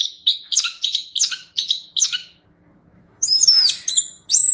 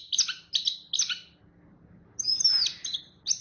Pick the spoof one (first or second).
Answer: first